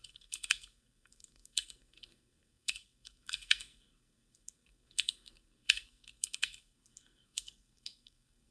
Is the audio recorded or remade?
remade